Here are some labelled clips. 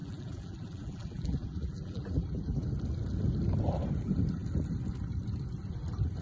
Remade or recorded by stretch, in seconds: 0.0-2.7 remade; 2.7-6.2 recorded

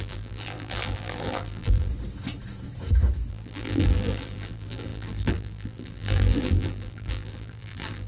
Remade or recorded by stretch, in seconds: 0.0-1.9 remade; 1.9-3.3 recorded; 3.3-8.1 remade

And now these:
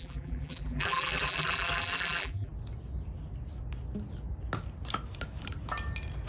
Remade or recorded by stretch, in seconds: 0.0-2.5 remade; 2.5-6.3 recorded

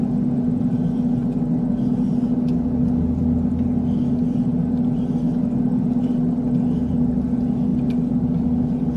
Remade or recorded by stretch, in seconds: 0.0-9.0 recorded

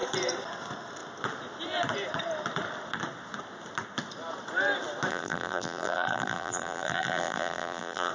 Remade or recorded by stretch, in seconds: 0.0-5.1 recorded; 5.1-8.1 remade